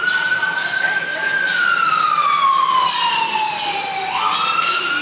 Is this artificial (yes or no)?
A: no